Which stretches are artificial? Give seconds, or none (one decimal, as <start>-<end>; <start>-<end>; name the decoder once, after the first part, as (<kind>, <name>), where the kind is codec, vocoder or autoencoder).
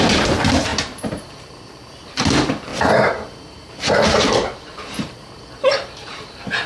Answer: 0.7-1.3 (vocoder, BigVGAN v2); 2.7-6.7